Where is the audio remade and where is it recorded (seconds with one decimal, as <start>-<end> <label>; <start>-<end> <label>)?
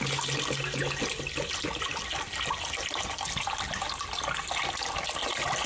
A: 0.0-5.7 recorded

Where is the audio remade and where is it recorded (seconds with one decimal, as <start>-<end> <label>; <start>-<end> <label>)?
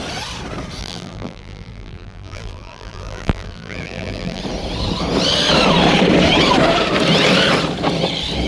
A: 0.0-0.8 recorded; 0.8-4.4 remade; 4.4-8.5 recorded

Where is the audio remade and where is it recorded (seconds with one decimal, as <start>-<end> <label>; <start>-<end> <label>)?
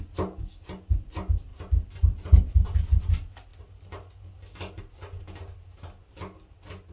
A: 0.0-6.9 recorded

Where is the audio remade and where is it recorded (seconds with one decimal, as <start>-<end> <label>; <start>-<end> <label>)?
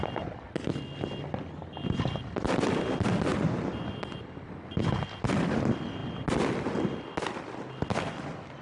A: 0.0-3.3 recorded; 3.3-4.6 remade; 4.6-6.0 recorded; 6.0-7.1 remade; 7.1-8.6 recorded